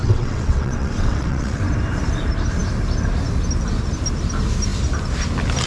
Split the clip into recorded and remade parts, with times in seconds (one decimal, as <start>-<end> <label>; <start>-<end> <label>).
0.0-1.6 remade; 1.6-5.7 recorded